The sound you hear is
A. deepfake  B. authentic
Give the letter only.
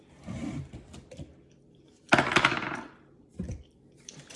A